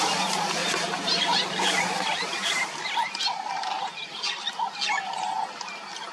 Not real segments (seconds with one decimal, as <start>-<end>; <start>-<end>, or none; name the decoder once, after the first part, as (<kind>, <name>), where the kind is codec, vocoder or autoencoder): 0.6-4.3 (vocoder, BigVGAN v2)

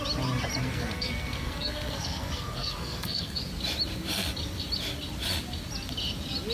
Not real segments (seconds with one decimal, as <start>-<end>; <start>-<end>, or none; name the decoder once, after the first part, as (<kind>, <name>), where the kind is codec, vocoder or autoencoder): 0.6-3.4 (codec, SNAC)

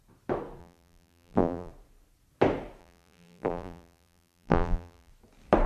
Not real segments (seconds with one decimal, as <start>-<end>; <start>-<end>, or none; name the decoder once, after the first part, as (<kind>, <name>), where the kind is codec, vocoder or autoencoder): 0.6-1.7 (vocoder, BigVGAN v2); 2.8-5.1

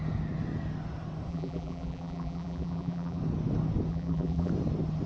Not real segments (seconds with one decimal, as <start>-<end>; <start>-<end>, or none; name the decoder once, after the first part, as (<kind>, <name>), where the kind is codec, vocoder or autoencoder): 1.3-3.2 (vocoder, BigVGAN v2); 3.9-4.5

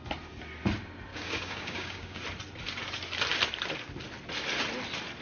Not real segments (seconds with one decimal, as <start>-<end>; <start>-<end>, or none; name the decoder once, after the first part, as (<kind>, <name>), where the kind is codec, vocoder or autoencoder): 1.1-2.2 (codec, DAC)

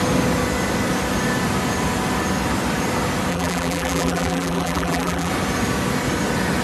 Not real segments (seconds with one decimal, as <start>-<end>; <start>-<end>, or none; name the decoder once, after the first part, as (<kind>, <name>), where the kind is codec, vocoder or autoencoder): 3.3-5.3 (vocoder, BigVGAN v2)

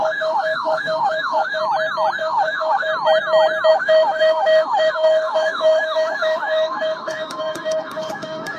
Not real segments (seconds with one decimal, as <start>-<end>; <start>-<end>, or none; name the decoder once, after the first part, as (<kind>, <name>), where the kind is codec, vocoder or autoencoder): 0.0-1.6 (autoencoder, DAC-VAE); 2.2-2.9; 3.7-8.6

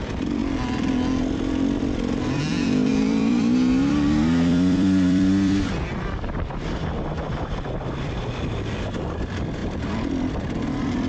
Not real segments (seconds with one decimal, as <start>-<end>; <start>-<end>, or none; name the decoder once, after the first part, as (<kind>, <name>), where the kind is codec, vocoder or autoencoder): 0.0-0.4 (vocoder, BigVGAN v2); 1.8-11.1